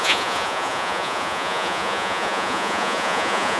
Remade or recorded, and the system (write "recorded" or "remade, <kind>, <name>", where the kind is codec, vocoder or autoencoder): remade, vocoder, Vocos